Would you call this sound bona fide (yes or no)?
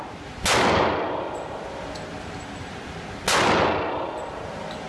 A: yes